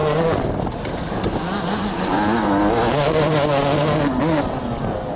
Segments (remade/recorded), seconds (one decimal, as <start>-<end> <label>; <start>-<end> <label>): 0.0-5.2 recorded